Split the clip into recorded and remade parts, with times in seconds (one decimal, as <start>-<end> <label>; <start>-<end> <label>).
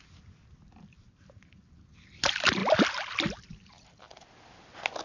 0.0-5.0 recorded